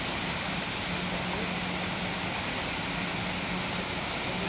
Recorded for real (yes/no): yes